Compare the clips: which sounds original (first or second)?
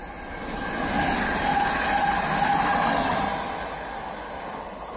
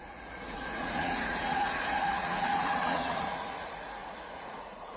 first